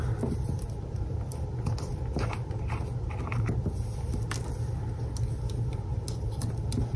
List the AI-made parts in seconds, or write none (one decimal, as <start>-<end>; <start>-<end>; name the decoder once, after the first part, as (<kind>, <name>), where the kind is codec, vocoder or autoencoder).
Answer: none